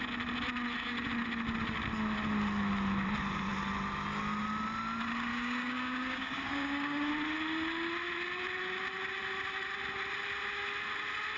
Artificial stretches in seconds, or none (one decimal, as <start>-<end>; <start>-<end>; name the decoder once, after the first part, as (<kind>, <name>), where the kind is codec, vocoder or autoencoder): 5.3-7.1 (codec, DAC)